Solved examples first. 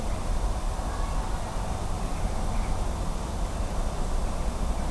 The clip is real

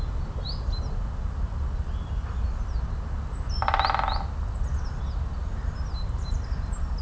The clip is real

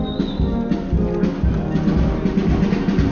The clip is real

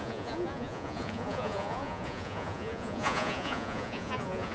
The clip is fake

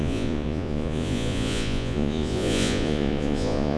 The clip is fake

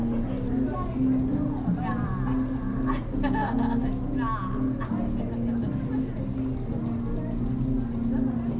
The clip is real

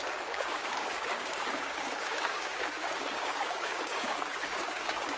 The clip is fake